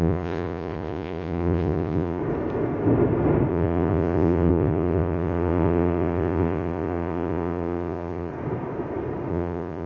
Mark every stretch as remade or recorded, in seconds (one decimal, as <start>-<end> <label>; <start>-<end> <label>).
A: 0.0-2.2 remade; 2.2-3.5 recorded; 3.5-8.3 remade; 8.3-9.3 recorded; 9.3-9.9 remade